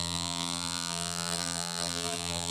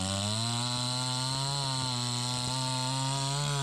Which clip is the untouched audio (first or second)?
second